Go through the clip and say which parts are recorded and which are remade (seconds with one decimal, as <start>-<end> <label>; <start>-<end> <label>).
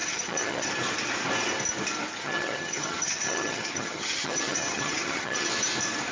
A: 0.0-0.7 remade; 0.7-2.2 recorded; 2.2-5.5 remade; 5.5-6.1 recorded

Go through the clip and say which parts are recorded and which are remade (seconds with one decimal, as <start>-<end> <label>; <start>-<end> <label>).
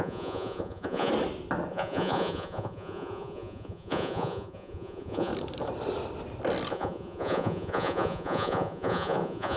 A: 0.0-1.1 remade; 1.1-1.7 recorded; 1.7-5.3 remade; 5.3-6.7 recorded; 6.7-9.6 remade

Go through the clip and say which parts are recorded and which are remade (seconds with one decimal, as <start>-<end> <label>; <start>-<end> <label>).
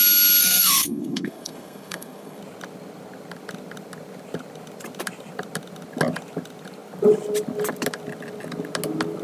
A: 0.0-0.4 recorded; 0.4-2.4 remade; 2.4-9.2 recorded